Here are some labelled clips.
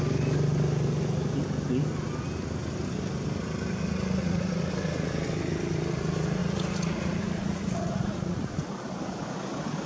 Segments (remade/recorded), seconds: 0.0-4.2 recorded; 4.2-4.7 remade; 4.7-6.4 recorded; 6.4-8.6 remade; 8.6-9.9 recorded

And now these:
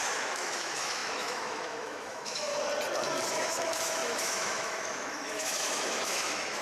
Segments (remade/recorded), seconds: 0.0-2.5 remade; 2.5-3.3 recorded; 3.3-6.6 remade

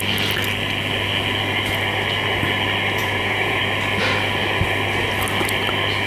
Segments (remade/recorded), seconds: 0.0-3.0 recorded; 3.0-3.6 remade; 3.6-6.1 recorded

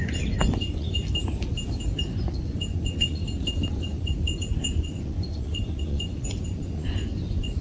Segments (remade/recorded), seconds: 0.0-1.0 remade; 1.0-2.0 recorded; 2.0-3.2 remade; 3.2-3.7 recorded; 3.7-7.6 remade